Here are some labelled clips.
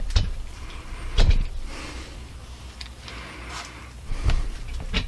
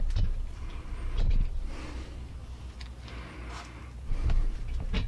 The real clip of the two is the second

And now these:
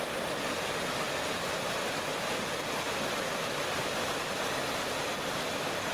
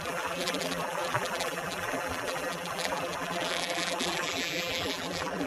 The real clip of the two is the first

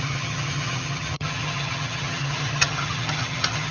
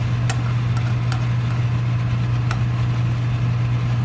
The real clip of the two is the second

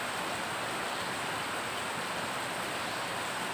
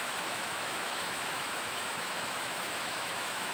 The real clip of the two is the first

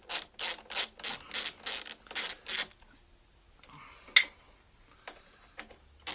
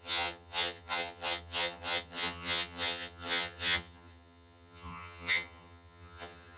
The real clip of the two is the first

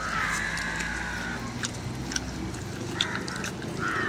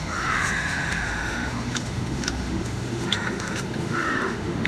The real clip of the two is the first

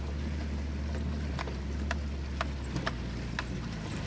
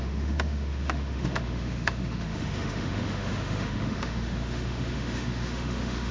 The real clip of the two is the first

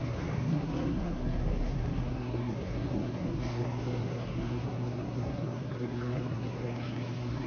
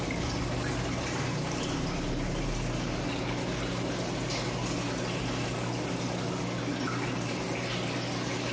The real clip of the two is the second